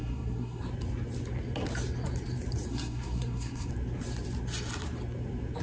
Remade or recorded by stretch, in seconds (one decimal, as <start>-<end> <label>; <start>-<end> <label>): 0.0-0.6 remade; 0.6-2.7 recorded; 2.7-3.7 remade; 3.7-5.6 recorded